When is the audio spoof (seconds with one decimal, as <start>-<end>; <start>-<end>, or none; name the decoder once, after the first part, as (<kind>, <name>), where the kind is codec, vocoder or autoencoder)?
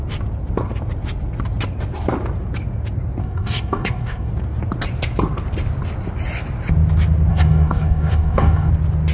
3.2-4.3 (codec, DAC); 7.3-8.7